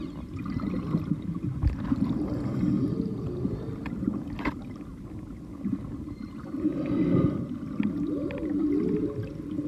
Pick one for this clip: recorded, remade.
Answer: recorded